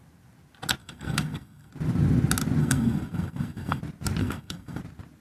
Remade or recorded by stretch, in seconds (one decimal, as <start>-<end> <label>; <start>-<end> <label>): 0.0-0.8 recorded; 0.8-1.7 remade; 1.7-2.6 recorded; 2.6-3.8 remade; 3.8-4.2 recorded; 4.2-4.8 remade; 4.8-5.2 recorded